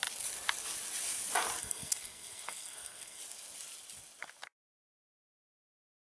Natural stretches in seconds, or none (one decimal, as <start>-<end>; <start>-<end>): 0.0-1.6; 3.2-5.5